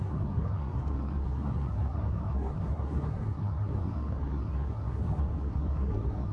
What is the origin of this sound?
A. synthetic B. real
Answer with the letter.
A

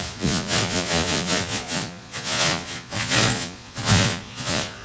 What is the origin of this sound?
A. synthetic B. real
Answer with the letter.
A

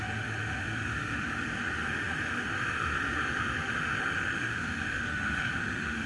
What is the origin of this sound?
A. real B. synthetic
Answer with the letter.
B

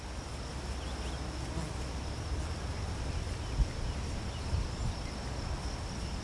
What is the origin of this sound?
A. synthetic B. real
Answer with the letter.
B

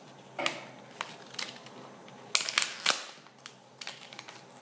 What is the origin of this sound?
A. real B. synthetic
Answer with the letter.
A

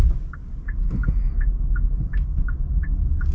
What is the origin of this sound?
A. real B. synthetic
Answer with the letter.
A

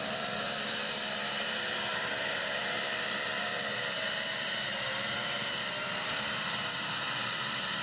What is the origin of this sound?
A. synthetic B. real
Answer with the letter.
A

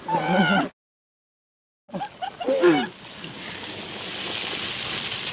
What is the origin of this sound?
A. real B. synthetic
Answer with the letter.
A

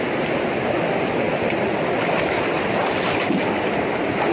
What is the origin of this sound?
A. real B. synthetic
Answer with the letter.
A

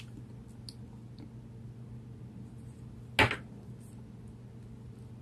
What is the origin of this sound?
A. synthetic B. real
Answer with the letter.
B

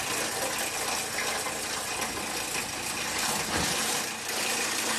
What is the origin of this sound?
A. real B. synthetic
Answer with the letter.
A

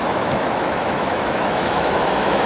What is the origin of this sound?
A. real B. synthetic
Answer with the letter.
B